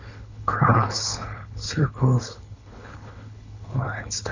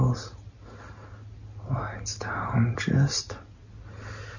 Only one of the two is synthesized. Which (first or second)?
first